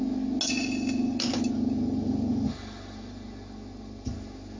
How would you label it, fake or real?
real